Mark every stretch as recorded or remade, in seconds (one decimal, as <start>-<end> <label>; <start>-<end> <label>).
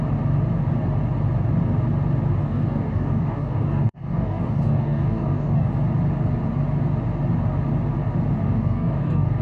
0.0-2.4 recorded; 2.4-5.7 remade; 5.7-8.4 recorded; 8.4-9.4 remade